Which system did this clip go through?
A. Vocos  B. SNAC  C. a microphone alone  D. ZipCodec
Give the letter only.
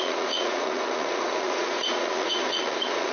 A